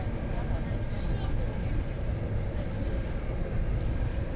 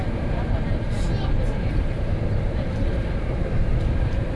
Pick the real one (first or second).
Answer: first